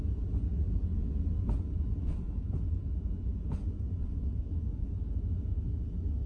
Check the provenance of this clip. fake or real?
real